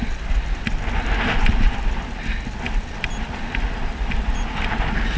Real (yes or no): yes